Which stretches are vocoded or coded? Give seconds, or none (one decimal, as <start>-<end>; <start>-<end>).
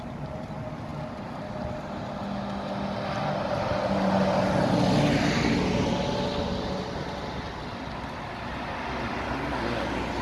none